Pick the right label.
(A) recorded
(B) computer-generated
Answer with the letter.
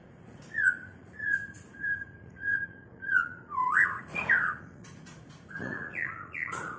B